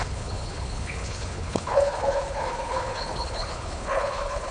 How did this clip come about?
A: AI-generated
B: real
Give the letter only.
A